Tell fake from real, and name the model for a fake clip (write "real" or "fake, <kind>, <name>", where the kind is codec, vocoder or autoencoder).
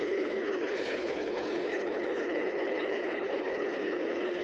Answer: fake, codec, HILCodec